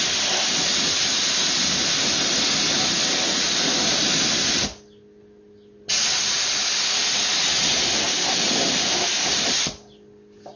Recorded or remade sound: recorded